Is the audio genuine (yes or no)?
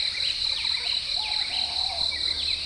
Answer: yes